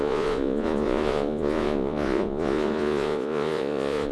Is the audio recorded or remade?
remade